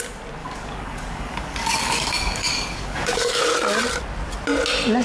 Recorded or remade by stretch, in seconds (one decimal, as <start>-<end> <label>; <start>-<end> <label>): 0.0-0.4 recorded; 0.4-3.4 remade; 3.4-5.0 recorded